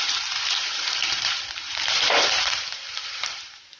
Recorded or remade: remade